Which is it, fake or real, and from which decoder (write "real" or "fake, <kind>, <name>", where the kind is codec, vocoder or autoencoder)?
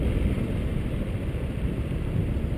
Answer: real